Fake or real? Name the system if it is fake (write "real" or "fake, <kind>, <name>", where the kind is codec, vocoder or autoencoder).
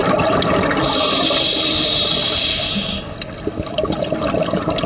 real